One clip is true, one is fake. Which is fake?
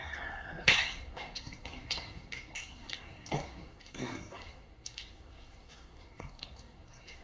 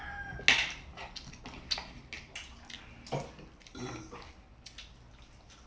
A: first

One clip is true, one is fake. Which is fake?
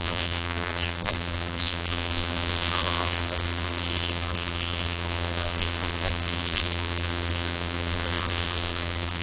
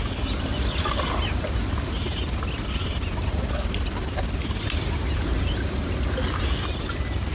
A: first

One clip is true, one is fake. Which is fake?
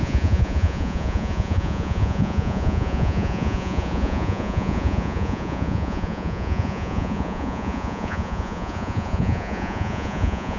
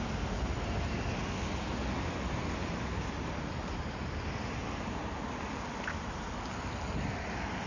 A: first